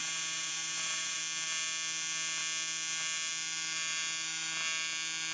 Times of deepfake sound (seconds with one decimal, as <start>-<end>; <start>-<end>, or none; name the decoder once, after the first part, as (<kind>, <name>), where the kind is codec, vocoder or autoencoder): 0.0-1.2 (vocoder, Vocos)